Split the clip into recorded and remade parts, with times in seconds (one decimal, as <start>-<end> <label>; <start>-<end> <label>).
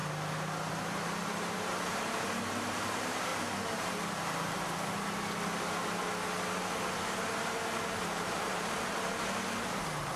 0.0-0.7 recorded; 0.7-3.3 remade; 3.3-8.0 recorded; 8.0-9.1 remade; 9.1-10.2 recorded